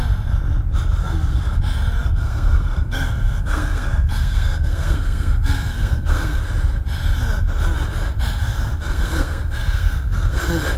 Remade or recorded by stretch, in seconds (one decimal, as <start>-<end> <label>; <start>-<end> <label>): 0.0-1.0 recorded; 1.0-1.6 remade; 1.6-2.0 recorded; 2.0-6.4 remade; 6.4-8.4 recorded; 8.4-10.4 remade; 10.4-10.8 recorded